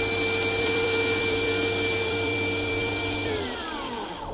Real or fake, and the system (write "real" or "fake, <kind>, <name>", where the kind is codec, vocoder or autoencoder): fake, vocoder, BigVGAN v2